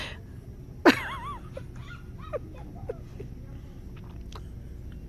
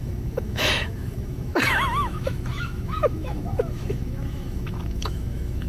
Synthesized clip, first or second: second